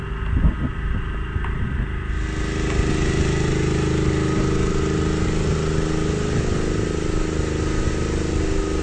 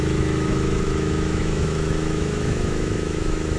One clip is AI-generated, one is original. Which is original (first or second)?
first